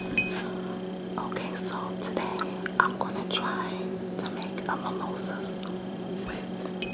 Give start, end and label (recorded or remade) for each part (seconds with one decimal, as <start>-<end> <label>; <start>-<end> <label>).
0.0-2.3 recorded; 2.3-6.4 remade; 6.4-6.9 recorded